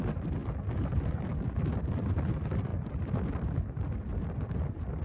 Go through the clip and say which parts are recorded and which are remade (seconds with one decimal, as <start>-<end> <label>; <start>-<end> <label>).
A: 0.0-5.0 recorded